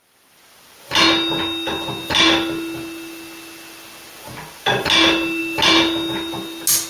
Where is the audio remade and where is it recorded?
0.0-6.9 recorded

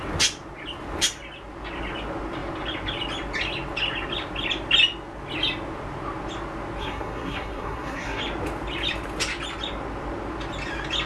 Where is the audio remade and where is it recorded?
0.0-6.8 recorded; 6.8-8.2 remade; 8.2-11.1 recorded

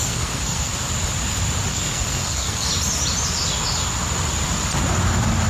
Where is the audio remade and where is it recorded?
0.0-0.7 remade; 0.7-1.7 recorded; 1.7-2.7 remade; 2.7-5.5 recorded